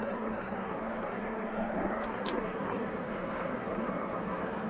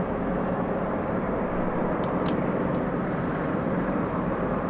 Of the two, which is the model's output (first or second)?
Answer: first